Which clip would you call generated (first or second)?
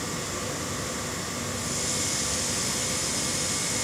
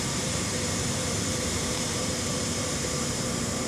second